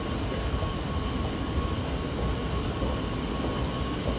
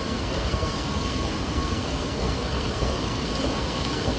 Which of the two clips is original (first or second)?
first